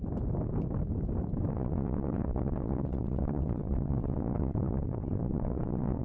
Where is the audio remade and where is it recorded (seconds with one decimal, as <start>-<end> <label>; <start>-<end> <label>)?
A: 0.0-1.5 recorded; 1.5-6.0 remade